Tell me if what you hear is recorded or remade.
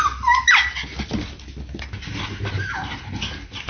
recorded